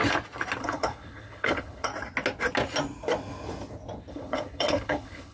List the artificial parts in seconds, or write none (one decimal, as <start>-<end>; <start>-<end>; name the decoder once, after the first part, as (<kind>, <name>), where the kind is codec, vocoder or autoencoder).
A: 0.6-1.9 (codec, HILCodec); 4.1-5.3